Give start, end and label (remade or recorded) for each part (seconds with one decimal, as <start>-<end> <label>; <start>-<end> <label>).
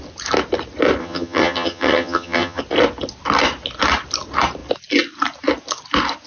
0.0-1.0 recorded; 1.0-2.6 remade; 2.6-6.3 recorded